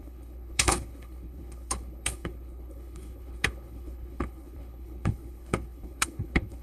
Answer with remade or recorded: remade